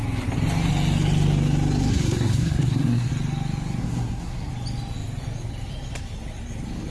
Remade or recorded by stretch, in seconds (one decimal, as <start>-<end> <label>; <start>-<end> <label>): 0.0-1.9 recorded; 1.9-3.1 remade; 3.1-3.8 recorded; 3.8-4.5 remade; 4.5-6.9 recorded